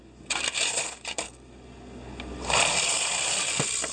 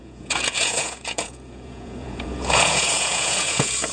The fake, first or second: second